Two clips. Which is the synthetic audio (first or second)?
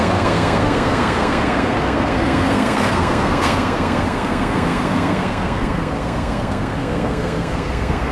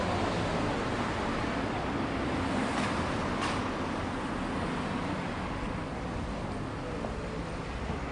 first